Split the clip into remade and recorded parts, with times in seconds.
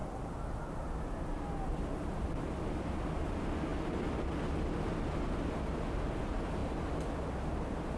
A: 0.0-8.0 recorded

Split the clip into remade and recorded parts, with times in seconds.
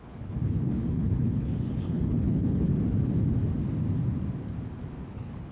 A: 0.0-2.7 remade; 2.7-5.1 recorded; 5.1-5.5 remade